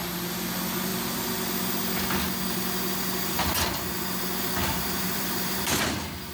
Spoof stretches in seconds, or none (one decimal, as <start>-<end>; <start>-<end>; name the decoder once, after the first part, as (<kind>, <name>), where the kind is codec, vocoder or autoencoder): 4.6-5.7 (vocoder, BigVGAN v2)